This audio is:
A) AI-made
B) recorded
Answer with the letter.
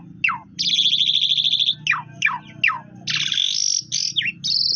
B